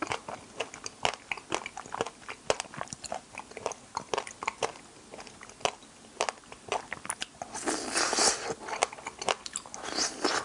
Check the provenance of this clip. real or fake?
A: real